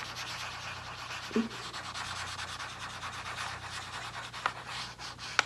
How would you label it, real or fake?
real